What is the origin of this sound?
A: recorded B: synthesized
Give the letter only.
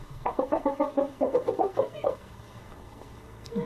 B